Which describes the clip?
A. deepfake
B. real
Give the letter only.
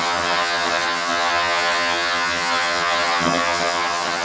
A